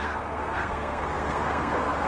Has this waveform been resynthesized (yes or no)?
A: yes